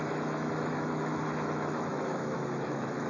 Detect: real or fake fake